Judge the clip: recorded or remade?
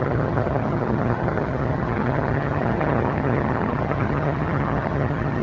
remade